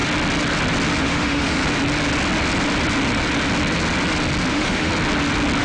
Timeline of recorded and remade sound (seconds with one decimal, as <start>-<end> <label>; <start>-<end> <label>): 0.0-1.0 recorded; 1.0-1.6 remade; 1.6-4.5 recorded; 4.5-4.9 remade; 4.9-5.6 recorded